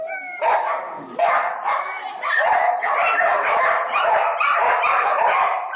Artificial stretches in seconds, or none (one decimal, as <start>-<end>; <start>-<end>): 3.3-4.1